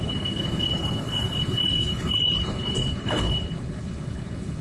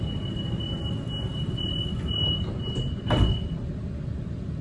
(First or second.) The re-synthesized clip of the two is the first